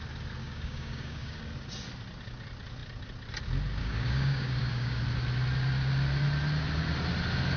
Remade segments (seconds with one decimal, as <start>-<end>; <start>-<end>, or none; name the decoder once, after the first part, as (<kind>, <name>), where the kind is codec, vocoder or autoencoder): 0.4-1.4 (codec, DAC); 3.8-5.0